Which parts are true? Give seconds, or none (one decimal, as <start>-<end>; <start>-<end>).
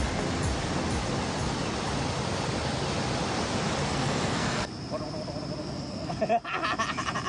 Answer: 0.0-3.9; 4.7-5.6; 6.1-7.3